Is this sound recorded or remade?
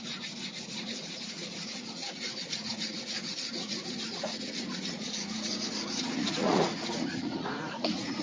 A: remade